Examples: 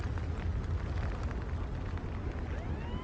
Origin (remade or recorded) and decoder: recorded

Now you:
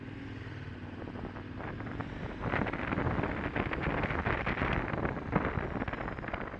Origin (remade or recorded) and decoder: recorded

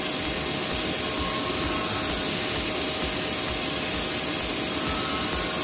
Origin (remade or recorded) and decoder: recorded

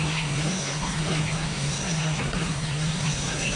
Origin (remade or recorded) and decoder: remade, codec, SNAC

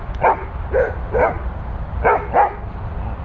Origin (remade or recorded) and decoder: recorded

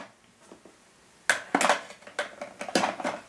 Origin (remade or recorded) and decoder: recorded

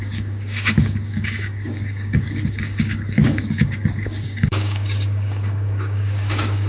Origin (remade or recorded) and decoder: remade, codec, DAC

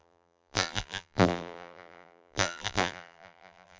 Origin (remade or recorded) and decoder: remade, vocoder, BigVGAN v2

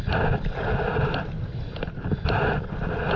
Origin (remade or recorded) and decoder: recorded